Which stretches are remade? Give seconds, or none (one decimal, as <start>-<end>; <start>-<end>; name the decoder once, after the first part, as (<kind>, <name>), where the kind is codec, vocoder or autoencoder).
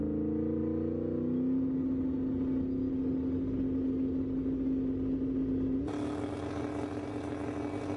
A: none